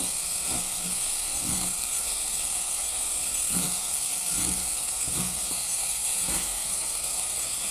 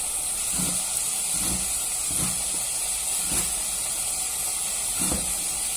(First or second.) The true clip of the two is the second